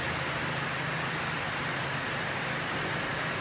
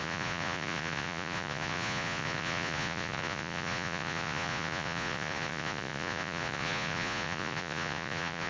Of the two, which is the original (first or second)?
first